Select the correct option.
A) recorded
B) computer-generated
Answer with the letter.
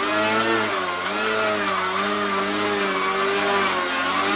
A